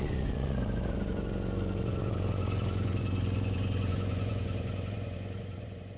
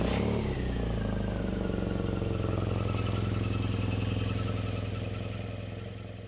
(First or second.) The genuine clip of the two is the second